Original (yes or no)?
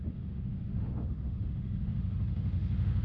no